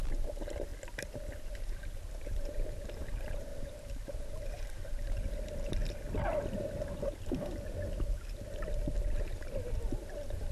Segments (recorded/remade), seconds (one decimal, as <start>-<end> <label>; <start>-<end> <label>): 0.0-0.7 remade; 0.7-1.6 recorded; 1.6-5.8 remade; 5.8-9.1 recorded; 9.1-10.5 remade